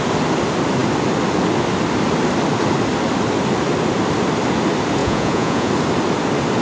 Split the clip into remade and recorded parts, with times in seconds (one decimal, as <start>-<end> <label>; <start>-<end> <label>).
0.0-5.0 recorded; 5.0-5.7 remade; 5.7-6.6 recorded